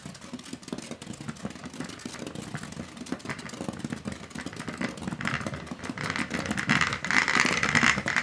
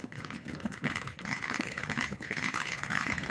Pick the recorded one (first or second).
first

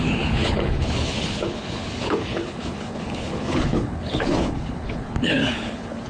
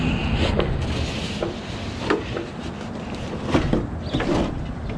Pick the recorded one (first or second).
second